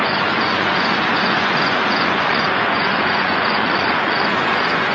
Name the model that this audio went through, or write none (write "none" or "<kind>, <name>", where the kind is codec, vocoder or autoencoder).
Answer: vocoder, Vocos